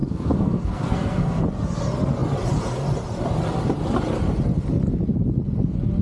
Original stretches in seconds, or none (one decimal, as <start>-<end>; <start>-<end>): 1.4-6.0